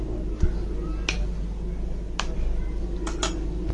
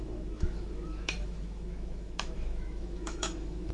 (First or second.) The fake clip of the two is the second